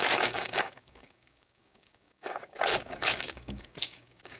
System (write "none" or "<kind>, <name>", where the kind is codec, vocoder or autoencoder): codec, DAC